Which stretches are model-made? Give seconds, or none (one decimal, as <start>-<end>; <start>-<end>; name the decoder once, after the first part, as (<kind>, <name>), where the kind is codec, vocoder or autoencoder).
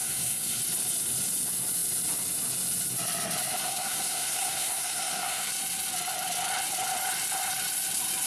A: 0.0-0.6 (codec, SNAC); 3.6-5.5